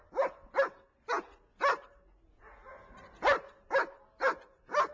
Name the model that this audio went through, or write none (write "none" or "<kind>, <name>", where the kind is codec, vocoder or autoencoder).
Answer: none